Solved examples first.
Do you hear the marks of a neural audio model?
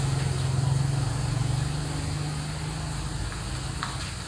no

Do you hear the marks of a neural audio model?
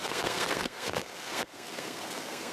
yes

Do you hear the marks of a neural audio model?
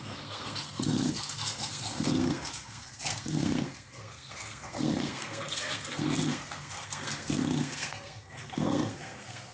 yes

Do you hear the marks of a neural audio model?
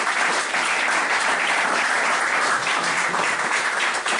yes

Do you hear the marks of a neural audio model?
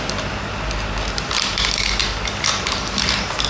no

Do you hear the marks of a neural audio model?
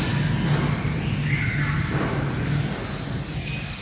no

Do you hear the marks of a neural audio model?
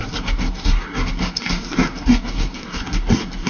yes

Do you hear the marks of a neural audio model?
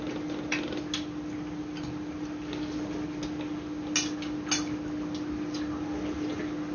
no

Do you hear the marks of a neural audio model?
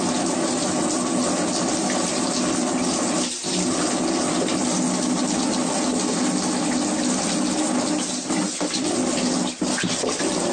no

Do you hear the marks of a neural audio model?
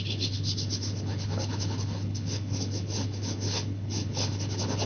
yes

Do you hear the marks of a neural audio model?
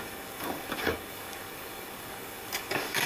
yes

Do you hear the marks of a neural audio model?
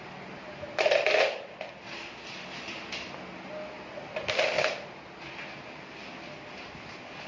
no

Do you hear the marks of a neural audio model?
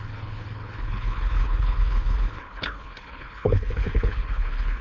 yes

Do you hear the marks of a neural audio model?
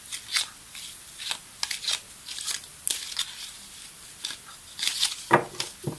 no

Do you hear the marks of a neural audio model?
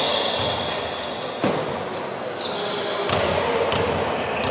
no